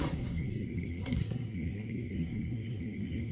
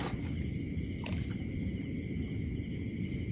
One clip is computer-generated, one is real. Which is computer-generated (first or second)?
first